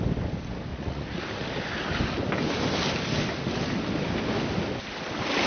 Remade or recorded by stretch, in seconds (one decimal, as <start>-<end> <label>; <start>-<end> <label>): 0.0-0.7 recorded; 0.7-1.2 remade; 1.2-5.5 recorded

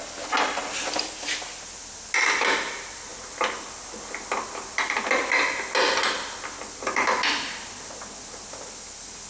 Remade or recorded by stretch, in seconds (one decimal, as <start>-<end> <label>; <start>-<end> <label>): 0.0-9.3 recorded

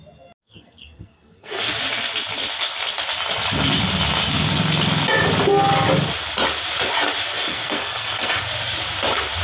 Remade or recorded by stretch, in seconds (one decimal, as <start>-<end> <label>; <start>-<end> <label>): 0.0-0.4 recorded; 0.4-1.7 remade; 1.7-7.5 recorded; 7.5-8.4 remade; 8.4-9.4 recorded

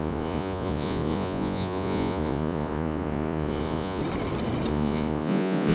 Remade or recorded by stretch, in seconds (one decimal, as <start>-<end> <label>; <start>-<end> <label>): 0.0-4.0 remade; 4.0-4.7 recorded; 4.7-5.7 remade

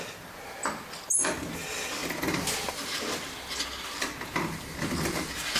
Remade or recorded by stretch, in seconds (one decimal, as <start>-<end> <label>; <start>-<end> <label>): 0.0-5.6 recorded

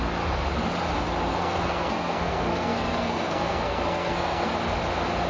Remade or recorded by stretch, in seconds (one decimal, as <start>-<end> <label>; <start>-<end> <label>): 0.0-1.3 recorded; 1.3-4.5 remade; 4.5-5.3 recorded

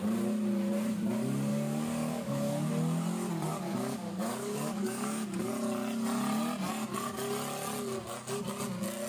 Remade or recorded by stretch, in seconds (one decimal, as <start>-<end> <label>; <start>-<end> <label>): 0.0-1.5 recorded; 1.5-2.7 remade; 2.7-3.5 recorded; 3.5-5.5 remade; 5.5-9.1 recorded

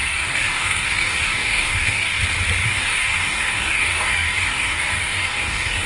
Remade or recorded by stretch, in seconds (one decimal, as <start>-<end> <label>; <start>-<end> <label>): 0.0-2.2 remade; 2.2-2.6 recorded; 2.6-5.9 remade